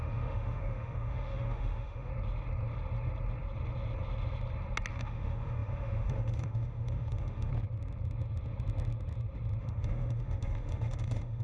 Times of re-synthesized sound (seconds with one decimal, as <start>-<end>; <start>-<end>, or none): 0.0-2.1; 4.9-7.5; 9.6-11.4